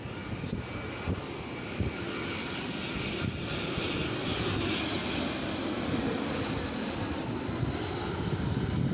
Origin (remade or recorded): recorded